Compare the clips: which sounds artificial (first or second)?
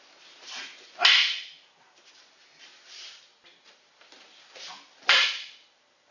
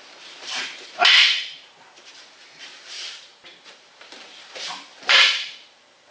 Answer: second